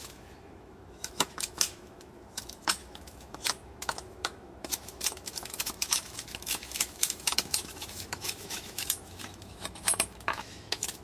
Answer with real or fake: fake